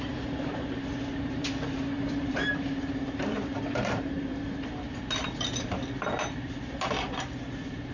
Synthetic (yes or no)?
yes